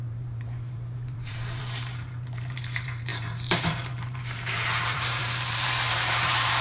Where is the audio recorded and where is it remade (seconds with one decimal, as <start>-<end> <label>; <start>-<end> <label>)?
0.0-6.6 remade